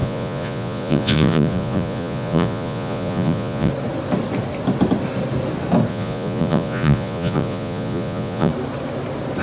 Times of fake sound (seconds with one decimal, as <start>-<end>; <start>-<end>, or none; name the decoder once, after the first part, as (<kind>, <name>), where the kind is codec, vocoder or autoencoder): 0.0-3.7 (vocoder, Vocos); 5.9-8.5